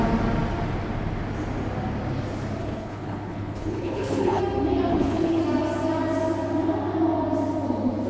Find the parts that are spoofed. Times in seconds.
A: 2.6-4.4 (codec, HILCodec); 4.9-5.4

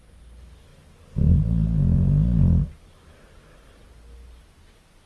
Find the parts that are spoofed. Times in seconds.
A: none

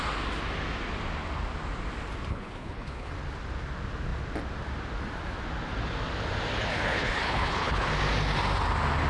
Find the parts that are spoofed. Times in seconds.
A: 2.3-3.1 (codec, HILCodec); 6.7-7.9